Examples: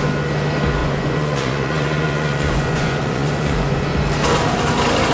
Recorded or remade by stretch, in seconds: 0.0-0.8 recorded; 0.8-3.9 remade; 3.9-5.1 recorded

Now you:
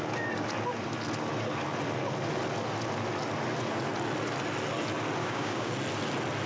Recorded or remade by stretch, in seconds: 0.0-5.2 recorded; 5.2-5.7 remade; 5.7-6.5 recorded

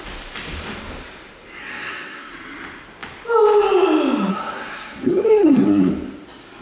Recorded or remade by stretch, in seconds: 0.0-1.6 recorded; 1.6-2.3 remade; 2.3-4.3 recorded; 4.3-5.9 remade; 5.9-6.6 recorded

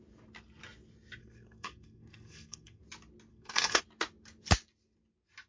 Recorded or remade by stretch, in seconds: 0.0-1.2 recorded; 1.2-2.8 remade; 2.8-3.3 recorded; 3.3-3.8 remade; 3.8-5.5 recorded

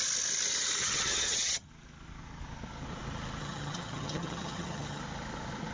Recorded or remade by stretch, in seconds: 0.0-0.8 recorded; 0.8-1.7 remade; 1.7-3.4 recorded; 3.4-5.0 remade; 5.0-5.7 recorded

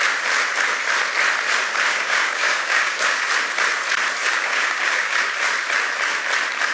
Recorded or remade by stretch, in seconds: 0.0-1.9 recorded; 1.9-3.3 remade; 3.3-4.2 recorded; 4.2-5.2 remade; 5.2-6.7 recorded

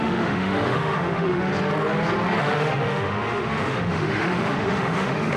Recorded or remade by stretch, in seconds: 0.0-1.5 remade; 1.5-2.4 recorded; 2.4-5.4 remade